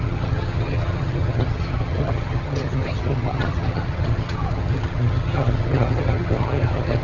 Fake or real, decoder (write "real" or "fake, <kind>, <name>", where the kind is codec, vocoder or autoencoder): fake, vocoder, HiFi-GAN